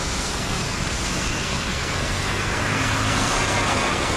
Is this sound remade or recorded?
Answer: remade